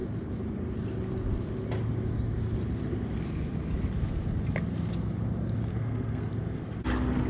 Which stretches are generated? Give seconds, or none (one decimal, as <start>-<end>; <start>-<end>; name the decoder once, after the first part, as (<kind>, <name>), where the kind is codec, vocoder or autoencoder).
5.7-6.3 (codec, SNAC)